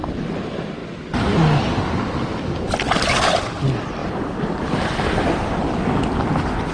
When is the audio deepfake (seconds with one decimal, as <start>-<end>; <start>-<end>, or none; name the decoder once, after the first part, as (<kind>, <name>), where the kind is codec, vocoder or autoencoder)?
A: 4.0-5.5 (vocoder, BigVGAN v2)